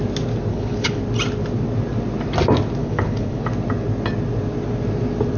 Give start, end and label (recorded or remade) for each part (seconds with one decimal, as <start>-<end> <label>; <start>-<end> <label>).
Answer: 0.0-0.5 recorded; 0.5-1.0 remade; 1.0-2.8 recorded; 2.8-3.4 remade; 3.4-5.4 recorded